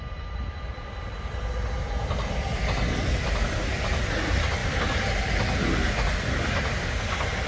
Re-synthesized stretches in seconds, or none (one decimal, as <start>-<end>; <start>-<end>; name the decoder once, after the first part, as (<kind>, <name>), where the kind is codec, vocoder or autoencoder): none